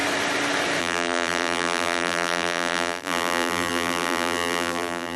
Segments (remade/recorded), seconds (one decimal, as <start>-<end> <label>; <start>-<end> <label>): 0.0-0.8 recorded; 0.8-5.2 remade